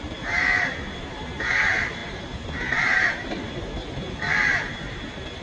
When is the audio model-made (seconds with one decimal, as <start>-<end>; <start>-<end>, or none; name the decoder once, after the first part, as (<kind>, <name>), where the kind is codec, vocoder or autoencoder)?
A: 0.0-5.4 (vocoder, BigVGAN v2)